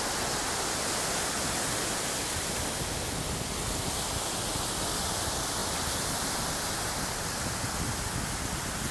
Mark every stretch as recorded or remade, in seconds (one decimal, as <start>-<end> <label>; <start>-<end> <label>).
0.0-5.6 recorded; 5.6-6.4 remade; 6.4-8.9 recorded